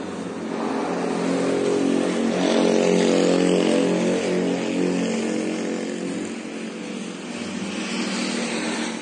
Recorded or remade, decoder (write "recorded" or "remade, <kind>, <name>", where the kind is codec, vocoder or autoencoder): recorded